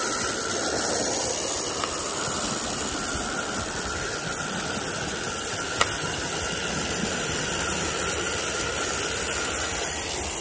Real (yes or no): yes